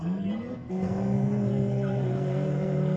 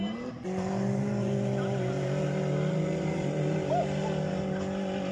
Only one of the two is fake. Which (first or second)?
first